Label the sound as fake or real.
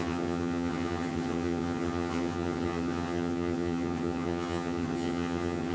fake